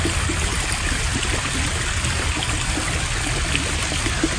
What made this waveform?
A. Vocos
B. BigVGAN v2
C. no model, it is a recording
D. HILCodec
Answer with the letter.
C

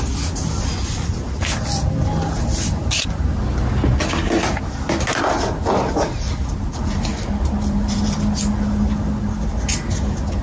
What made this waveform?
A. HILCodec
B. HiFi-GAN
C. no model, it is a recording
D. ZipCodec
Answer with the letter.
C